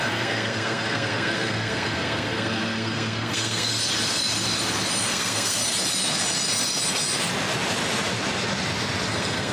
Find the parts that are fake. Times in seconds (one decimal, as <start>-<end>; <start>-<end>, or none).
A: 0.0-3.7; 5.0-5.6; 9.1-9.5